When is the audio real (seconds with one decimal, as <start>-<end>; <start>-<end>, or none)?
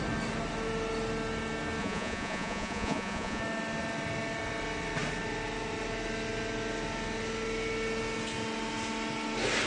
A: 0.0-1.8; 3.4-9.7